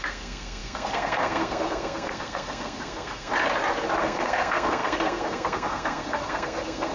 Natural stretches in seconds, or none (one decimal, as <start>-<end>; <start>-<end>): 3.3-4.0

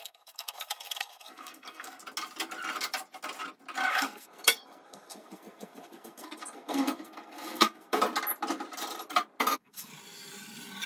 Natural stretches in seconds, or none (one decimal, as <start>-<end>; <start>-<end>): 2.0-3.9; 8.0-9.4; 9.9-10.9

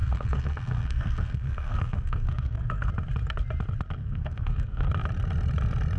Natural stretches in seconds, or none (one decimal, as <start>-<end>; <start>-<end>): 2.9-4.0; 4.9-6.0

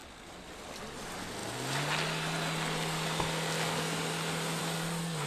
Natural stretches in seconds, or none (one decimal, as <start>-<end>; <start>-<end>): 0.0-5.3

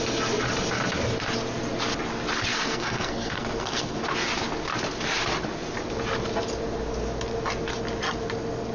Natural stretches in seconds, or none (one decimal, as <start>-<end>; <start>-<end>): 0.0-2.5; 4.0-8.7

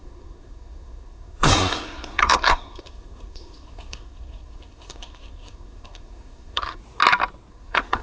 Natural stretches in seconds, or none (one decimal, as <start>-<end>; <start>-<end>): 6.8-7.5

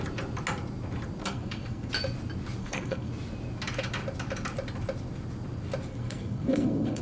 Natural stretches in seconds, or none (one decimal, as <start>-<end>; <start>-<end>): 0.0-1.2; 1.9-2.6; 3.1-5.9

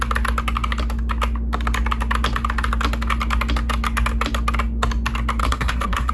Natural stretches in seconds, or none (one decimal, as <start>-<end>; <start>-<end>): 0.0-5.4